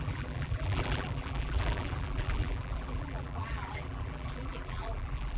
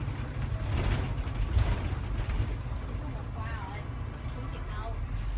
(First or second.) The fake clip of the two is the first